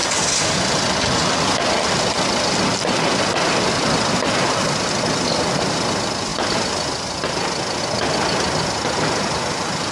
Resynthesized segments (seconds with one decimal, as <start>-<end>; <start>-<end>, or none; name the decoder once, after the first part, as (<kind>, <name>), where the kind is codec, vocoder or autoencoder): none